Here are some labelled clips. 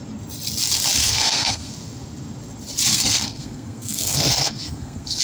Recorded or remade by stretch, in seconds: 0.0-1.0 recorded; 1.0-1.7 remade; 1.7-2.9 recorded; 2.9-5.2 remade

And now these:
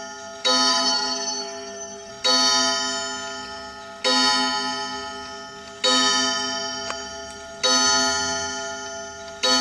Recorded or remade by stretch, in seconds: 0.0-0.7 recorded; 0.7-2.1 remade; 2.1-9.6 recorded

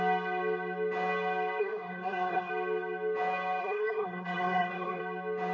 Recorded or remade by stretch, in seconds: 0.0-1.6 recorded; 1.6-2.5 remade; 2.5-3.6 recorded; 3.6-5.0 remade; 5.0-5.5 recorded

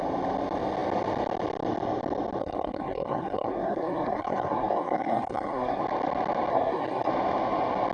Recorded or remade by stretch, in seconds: 0.0-2.4 recorded; 2.4-5.8 remade; 5.8-6.5 recorded; 6.5-7.1 remade; 7.1-7.9 recorded

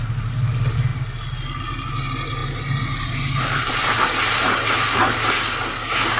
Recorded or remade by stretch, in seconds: 0.0-6.2 recorded